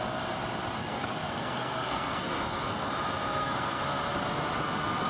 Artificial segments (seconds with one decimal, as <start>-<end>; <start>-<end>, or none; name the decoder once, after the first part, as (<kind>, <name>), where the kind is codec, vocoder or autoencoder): 0.8-2.9 (codec, SNAC); 3.3-3.8